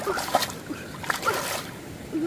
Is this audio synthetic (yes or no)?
no